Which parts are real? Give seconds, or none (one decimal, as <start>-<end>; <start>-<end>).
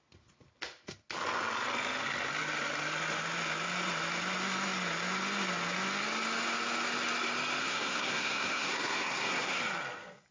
0.0-7.6; 9.6-10.3